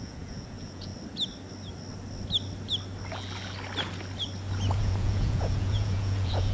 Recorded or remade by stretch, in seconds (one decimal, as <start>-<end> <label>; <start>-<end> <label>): 0.0-0.9 remade; 0.9-4.8 recorded; 4.8-6.5 remade